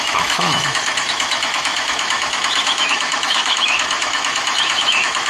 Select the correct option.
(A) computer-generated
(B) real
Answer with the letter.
A